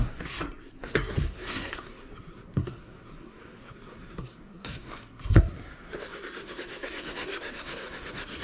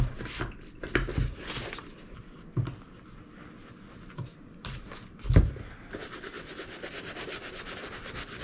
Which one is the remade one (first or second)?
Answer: first